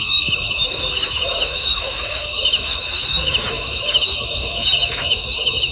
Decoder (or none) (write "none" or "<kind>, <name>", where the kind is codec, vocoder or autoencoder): autoencoder, DAC-VAE